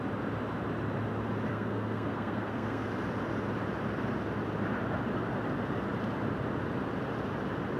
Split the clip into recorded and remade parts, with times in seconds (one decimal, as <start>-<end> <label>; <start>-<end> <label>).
0.0-1.5 recorded; 1.5-2.9 remade; 2.9-7.8 recorded